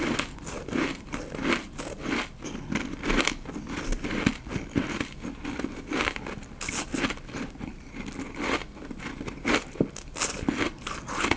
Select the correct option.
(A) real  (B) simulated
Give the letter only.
A